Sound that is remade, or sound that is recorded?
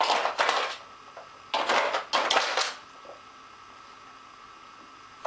recorded